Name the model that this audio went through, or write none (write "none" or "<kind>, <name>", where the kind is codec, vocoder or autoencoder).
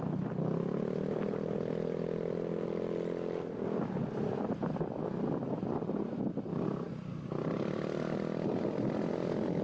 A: none